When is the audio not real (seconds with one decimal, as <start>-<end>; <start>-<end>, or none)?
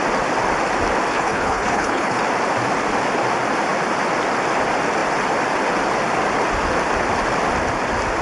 1.1-2.2